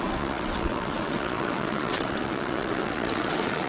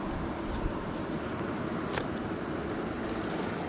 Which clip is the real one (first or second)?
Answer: second